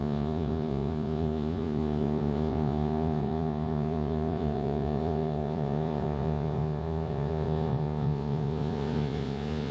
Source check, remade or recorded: remade